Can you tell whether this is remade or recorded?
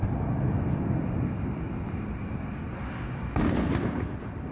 recorded